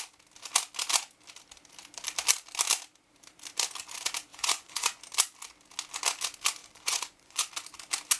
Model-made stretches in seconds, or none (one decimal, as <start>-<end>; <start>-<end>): 4.3-5.0; 6.6-7.5